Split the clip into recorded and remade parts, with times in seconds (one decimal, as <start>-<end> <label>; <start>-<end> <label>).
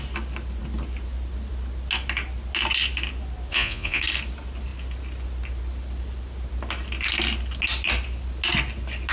0.0-3.5 recorded; 3.5-4.0 remade; 4.0-9.1 recorded